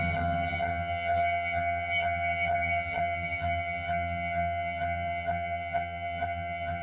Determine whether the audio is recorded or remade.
remade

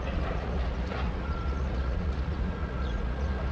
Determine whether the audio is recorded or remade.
remade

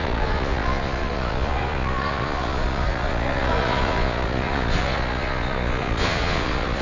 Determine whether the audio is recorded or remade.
remade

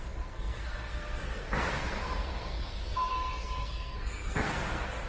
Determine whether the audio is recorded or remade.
remade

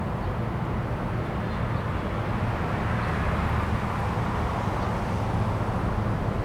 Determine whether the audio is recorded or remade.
recorded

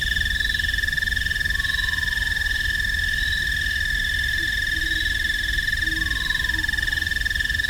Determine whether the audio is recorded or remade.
recorded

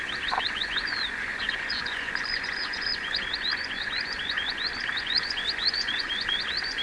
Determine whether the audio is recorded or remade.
remade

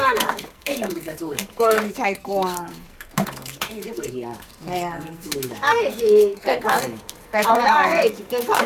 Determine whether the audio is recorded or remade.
remade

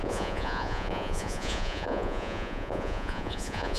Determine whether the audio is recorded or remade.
remade